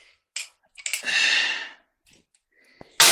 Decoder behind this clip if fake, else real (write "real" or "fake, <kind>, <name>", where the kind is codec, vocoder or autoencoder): real